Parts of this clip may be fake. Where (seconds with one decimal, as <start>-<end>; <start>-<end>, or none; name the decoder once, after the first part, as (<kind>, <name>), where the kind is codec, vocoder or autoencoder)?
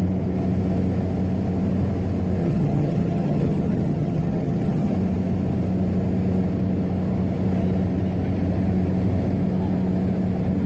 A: 2.4-4.9 (vocoder, HiFi-GAN)